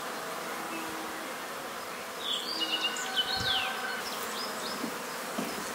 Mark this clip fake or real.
real